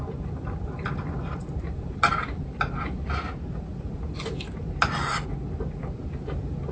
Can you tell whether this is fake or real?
real